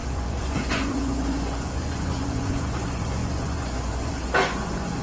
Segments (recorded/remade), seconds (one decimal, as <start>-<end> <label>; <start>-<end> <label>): 0.0-5.0 remade